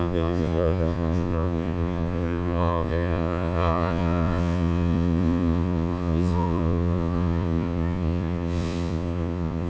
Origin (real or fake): fake